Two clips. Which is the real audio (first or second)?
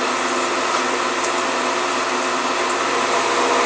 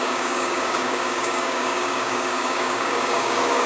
first